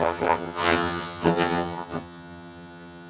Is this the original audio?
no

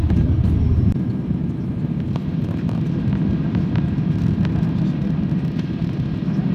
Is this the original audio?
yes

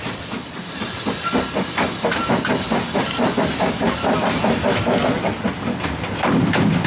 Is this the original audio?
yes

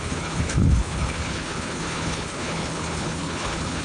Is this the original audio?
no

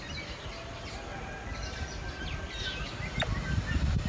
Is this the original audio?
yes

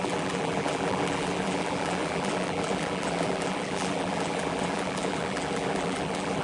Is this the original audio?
no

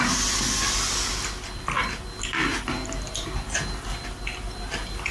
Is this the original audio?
yes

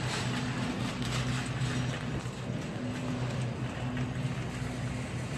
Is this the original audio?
yes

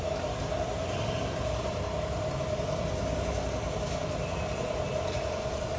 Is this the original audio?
yes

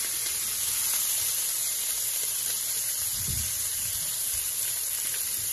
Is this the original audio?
yes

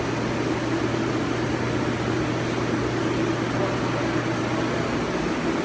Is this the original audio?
yes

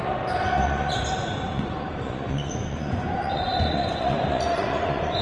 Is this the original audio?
no